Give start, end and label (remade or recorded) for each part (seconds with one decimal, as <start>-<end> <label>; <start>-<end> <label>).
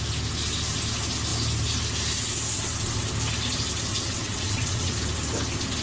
0.0-3.9 recorded; 3.9-4.9 remade; 4.9-5.8 recorded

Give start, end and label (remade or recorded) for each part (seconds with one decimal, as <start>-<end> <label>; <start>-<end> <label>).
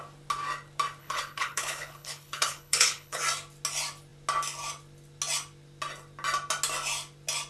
0.0-1.0 recorded; 1.0-3.2 remade; 3.2-7.5 recorded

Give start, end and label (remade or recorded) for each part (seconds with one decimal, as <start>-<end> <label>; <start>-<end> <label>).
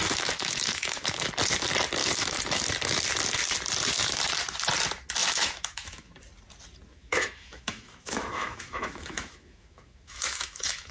0.0-1.3 remade; 1.3-2.0 recorded; 2.0-2.6 remade; 2.6-5.2 recorded; 5.2-6.1 remade; 6.1-6.9 recorded; 6.9-10.9 remade